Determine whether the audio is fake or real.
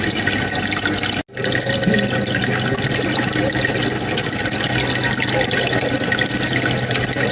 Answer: real